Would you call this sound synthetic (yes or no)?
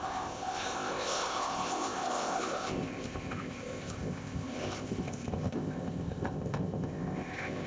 yes